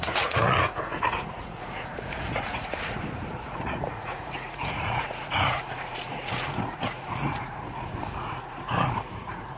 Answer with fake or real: fake